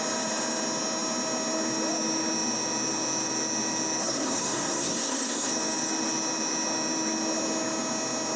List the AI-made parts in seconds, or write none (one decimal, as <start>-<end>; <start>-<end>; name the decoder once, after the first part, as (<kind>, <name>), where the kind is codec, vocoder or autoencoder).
4.0-5.5 (codec, SNAC)